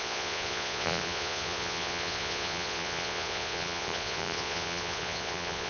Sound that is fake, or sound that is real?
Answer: fake